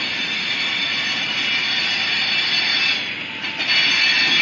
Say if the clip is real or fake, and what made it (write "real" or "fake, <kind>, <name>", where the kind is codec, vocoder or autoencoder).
real